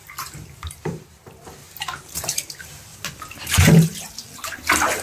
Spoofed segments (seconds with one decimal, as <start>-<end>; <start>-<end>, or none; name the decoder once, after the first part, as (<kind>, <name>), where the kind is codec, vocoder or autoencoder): 0.0-1.2 (vocoder, BigVGAN v2); 1.6-2.5